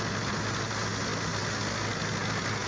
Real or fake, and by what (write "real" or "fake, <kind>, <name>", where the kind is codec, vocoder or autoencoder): real